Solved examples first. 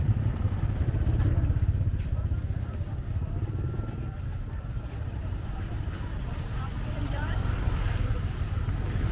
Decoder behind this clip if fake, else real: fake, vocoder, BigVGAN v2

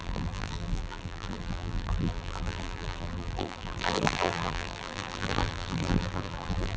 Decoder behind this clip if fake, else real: fake, vocoder, BigVGAN v2